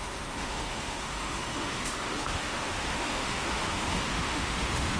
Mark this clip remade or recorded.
remade